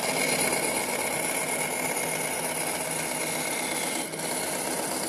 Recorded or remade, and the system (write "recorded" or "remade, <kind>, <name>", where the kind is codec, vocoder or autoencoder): recorded